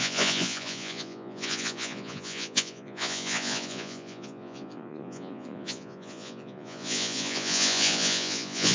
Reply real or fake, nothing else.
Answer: fake